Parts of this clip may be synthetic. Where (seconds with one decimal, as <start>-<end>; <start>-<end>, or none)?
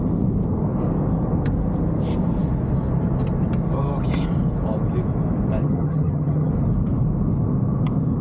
5.6-6.5